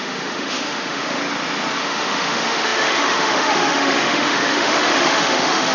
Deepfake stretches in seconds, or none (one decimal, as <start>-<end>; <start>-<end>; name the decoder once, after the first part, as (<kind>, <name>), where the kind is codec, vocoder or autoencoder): 0.0-1.2 (autoencoder, DAC-VAE); 1.8-5.7